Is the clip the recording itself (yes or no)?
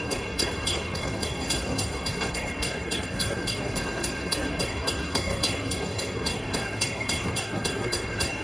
no